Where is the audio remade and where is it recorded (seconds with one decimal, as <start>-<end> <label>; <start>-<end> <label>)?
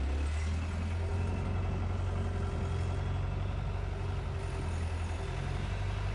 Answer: 0.0-6.1 recorded